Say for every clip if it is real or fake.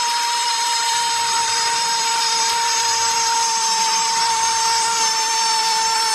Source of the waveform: fake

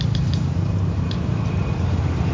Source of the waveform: fake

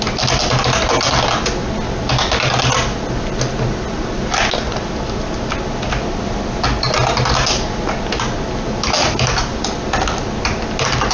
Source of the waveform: real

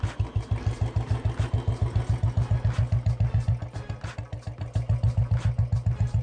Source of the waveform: real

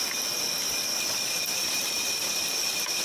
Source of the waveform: real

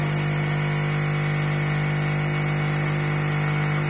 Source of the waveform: real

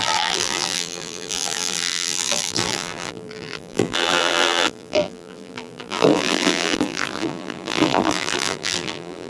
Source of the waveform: fake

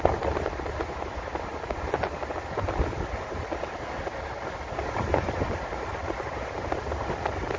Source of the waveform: real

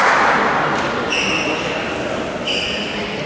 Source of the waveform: real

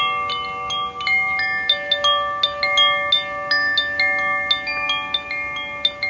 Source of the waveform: real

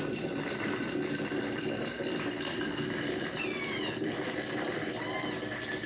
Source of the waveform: fake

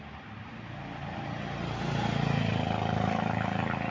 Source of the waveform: real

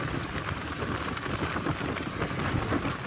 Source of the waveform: real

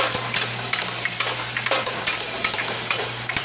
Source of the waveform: fake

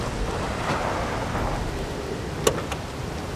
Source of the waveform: real